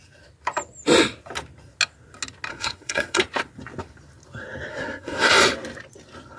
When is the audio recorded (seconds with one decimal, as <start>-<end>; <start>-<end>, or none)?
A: 0.0-2.5; 3.2-4.7; 5.3-6.4